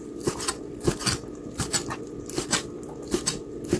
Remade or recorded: recorded